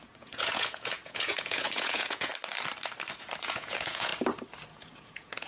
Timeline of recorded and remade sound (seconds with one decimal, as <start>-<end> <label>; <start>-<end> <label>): 0.0-2.3 remade; 2.3-3.4 recorded; 3.4-4.1 remade; 4.1-4.7 recorded; 4.7-5.5 remade